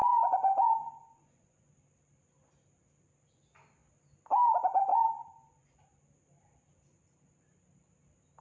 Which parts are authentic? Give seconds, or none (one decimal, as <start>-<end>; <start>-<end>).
1.7-4.9; 5.8-8.4

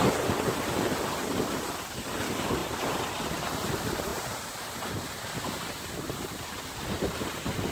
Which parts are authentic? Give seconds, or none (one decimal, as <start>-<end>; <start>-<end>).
0.0-7.7

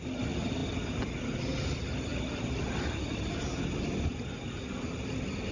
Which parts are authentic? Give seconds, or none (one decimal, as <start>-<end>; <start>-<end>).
0.0-5.5

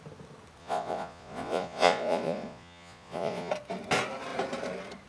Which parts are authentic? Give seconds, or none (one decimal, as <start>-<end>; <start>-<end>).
0.0-0.6; 3.5-5.1

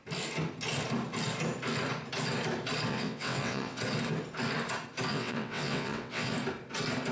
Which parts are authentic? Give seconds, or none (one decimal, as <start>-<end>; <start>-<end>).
0.0-2.9; 3.8-5.1; 6.3-7.1

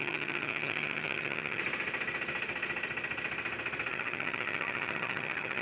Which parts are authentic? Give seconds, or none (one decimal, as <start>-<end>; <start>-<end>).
1.6-3.9

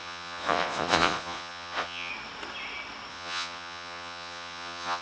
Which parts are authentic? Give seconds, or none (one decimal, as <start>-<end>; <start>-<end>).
2.1-3.1

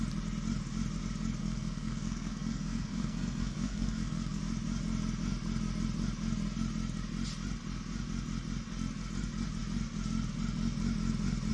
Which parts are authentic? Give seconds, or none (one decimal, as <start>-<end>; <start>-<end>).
0.0-1.4; 4.4-11.5